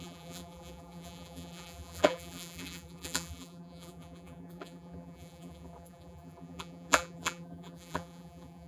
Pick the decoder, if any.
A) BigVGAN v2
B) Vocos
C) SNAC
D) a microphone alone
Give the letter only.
A